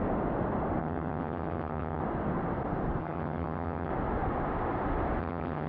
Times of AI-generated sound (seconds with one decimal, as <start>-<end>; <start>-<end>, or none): 0.8-2.0; 3.0-3.9; 5.2-5.7